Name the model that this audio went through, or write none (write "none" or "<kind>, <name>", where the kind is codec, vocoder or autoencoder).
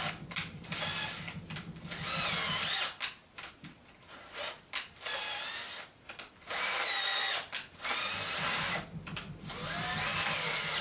none